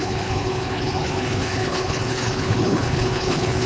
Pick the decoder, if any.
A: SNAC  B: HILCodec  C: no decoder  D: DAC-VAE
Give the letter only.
B